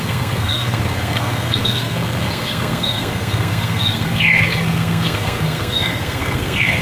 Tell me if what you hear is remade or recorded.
remade